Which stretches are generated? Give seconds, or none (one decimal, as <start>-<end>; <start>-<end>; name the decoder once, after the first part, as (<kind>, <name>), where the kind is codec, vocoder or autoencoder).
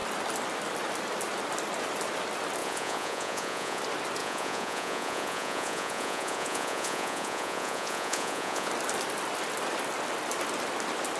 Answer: 2.6-3.8 (vocoder, Vocos); 4.2-8.7